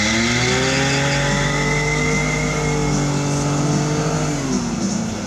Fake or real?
real